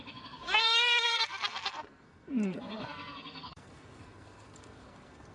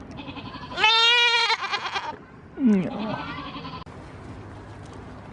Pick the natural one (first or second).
second